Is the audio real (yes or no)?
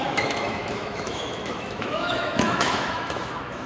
no